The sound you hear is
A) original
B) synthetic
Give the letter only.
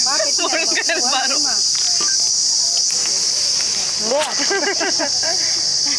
A